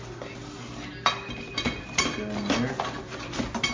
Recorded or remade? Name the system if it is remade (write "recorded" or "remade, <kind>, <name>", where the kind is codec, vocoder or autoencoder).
recorded